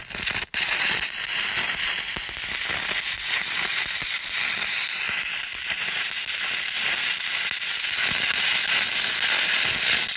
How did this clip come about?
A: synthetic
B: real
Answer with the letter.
B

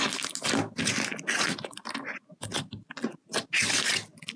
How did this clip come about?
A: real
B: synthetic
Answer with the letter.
A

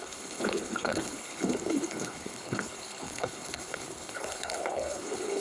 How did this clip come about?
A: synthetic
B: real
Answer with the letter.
A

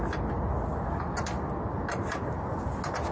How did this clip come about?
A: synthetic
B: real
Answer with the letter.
B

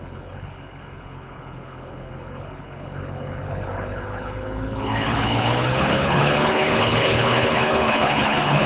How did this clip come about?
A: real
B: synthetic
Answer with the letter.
B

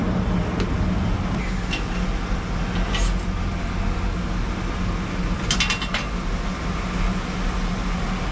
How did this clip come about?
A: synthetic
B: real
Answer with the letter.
B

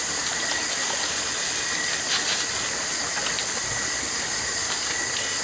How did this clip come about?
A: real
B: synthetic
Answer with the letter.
A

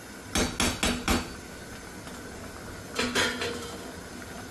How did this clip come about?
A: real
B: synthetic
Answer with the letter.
A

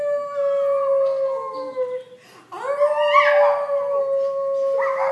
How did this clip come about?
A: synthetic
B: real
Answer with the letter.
B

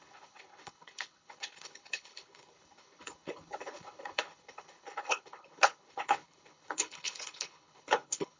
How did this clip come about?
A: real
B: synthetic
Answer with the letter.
B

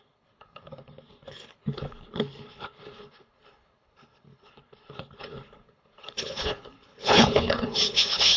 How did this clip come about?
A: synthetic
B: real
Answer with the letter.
A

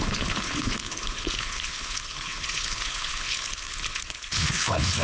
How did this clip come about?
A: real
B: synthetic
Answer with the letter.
B